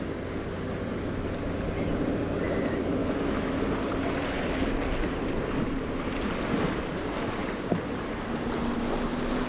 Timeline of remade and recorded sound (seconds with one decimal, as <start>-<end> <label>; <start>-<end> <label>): 0.0-3.0 recorded; 3.0-3.6 remade; 3.6-9.5 recorded